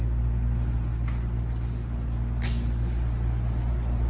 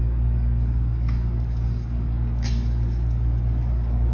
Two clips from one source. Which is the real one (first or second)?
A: first